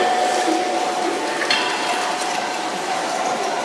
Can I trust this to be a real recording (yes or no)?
yes